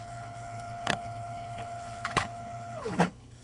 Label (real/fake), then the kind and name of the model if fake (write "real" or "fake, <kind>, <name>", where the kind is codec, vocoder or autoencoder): fake, codec, HILCodec